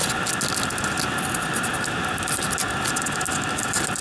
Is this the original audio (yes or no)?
yes